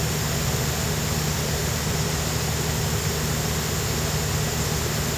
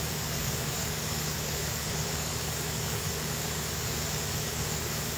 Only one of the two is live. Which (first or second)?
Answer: first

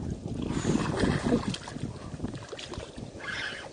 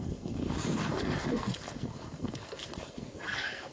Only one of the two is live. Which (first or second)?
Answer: first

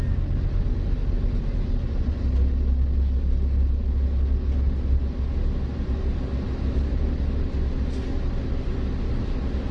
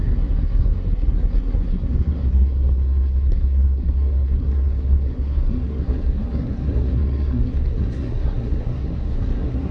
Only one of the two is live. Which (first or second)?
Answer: first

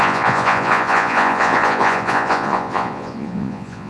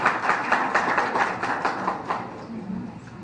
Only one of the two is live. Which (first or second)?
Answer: second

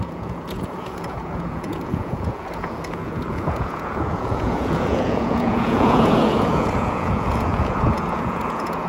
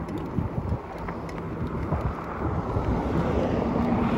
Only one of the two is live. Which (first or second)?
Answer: second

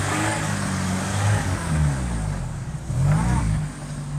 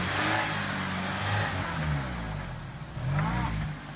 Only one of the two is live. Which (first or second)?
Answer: second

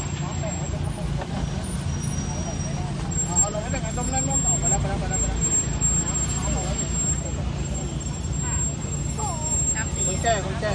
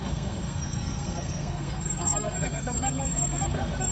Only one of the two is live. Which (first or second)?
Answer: first